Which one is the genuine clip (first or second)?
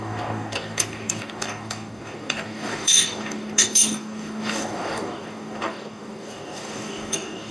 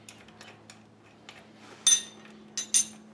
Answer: second